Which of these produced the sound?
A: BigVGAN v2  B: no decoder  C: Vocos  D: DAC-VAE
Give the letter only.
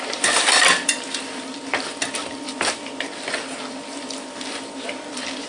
A